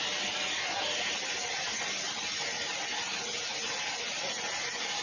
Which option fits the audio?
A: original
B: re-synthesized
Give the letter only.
A